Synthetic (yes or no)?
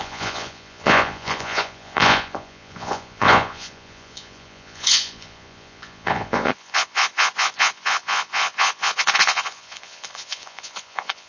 yes